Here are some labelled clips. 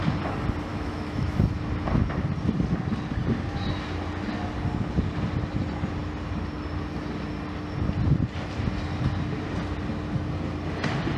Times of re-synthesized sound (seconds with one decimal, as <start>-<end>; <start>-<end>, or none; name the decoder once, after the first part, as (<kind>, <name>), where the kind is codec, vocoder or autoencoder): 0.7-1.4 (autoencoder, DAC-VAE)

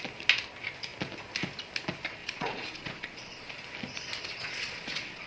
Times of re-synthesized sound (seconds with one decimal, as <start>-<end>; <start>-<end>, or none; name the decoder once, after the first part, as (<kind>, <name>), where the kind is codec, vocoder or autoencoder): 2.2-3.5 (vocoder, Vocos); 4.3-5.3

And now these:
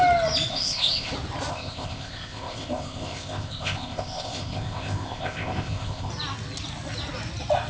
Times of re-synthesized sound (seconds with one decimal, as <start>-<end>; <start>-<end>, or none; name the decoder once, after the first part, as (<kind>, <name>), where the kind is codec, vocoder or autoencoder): 0.5-1.1 (codec, ZipCodec); 1.5-6.1

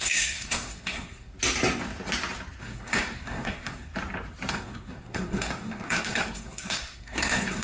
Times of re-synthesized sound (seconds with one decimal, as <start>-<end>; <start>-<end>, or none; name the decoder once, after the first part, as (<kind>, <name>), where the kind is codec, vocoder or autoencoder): 0.0-1.3 (codec, SNAC); 2.6-3.9; 4.5-7.6

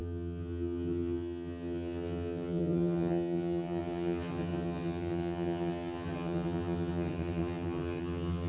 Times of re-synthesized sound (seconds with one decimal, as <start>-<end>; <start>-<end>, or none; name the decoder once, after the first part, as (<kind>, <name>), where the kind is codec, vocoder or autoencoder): 0.0-8.5 (vocoder, HiFi-GAN)

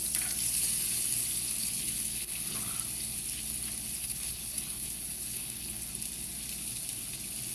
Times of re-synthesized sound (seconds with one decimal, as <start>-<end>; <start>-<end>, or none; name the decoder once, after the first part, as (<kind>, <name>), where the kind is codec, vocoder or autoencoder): 1.6-2.7 (codec, HILCodec); 4.0-5.9